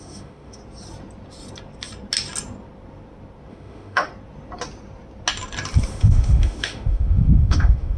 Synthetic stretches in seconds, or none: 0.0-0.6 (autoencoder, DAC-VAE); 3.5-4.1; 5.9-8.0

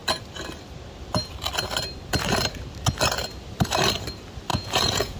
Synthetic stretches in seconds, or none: 4.5-5.2 (vocoder, Vocos)

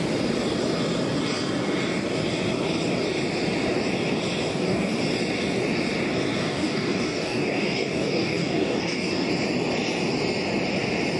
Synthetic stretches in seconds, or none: 4.5-5.0 (codec, DAC); 6.4-9.3

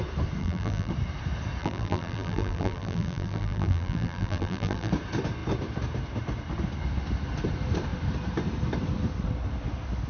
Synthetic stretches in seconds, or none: 0.4-0.9 (vocoder, BigVGAN v2); 1.6-4.9